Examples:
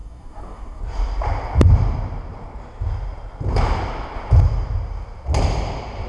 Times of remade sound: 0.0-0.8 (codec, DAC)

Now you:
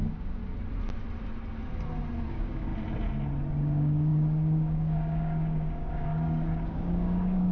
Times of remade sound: 0.0-0.4 (codec, DAC); 2.3-2.7; 3.5-7.5

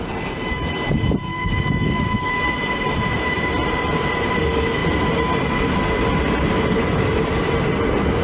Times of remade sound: 1.3-2.3 (codec, DAC)

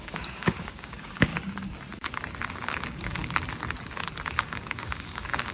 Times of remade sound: 0.0-1.3 (codec, DAC); 2.5-3.2; 4.4-5.5